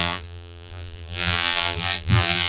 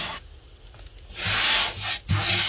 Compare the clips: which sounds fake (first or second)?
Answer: first